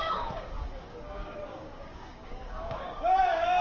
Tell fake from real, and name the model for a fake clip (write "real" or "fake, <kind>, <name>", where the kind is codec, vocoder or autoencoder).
fake, codec, DAC